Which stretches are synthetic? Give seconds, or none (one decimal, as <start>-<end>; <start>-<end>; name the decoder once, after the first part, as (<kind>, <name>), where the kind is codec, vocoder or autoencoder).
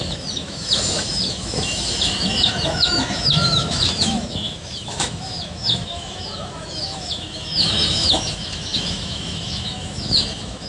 0.0-10.7 (autoencoder, DAC-VAE)